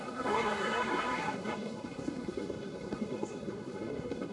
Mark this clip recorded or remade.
remade